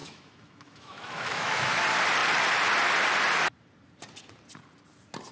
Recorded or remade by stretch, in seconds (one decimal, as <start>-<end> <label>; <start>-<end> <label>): 0.0-1.8 remade; 1.8-5.3 recorded